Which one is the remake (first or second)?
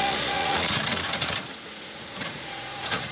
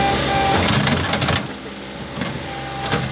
first